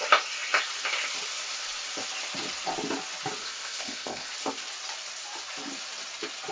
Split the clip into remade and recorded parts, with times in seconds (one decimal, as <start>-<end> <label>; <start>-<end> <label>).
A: 0.0-3.4 recorded; 3.4-4.3 remade; 4.3-6.5 recorded